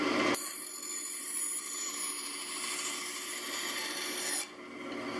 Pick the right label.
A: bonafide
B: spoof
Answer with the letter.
A